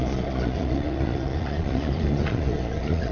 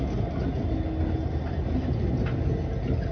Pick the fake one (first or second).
first